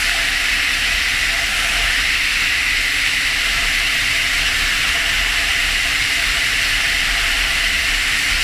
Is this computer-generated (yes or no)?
no